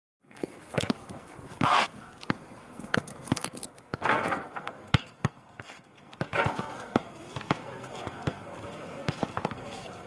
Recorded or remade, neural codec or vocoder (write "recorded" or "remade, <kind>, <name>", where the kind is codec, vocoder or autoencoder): remade, codec, SNAC